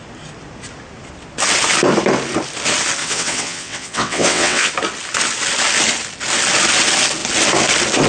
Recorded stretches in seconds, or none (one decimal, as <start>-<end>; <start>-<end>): 0.0-3.0; 4.7-8.1